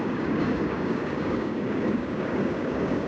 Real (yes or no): no